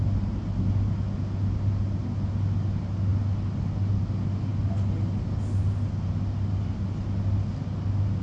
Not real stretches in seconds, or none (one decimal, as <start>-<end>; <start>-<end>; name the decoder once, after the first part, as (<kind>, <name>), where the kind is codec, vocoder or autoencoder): none